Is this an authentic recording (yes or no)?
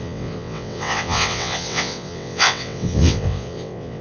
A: no